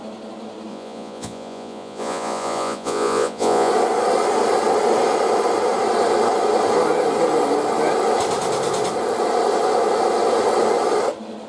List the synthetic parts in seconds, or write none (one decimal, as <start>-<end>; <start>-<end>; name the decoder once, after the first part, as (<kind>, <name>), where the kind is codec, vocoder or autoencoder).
0.7-3.7 (vocoder, Vocos)